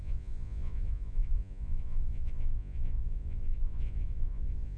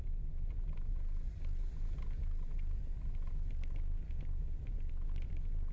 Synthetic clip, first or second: first